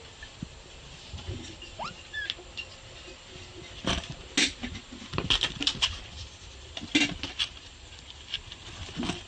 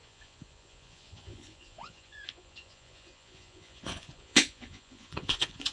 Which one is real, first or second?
first